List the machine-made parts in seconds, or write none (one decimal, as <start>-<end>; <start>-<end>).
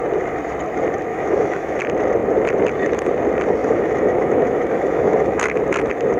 1.1-1.8; 3.6-5.6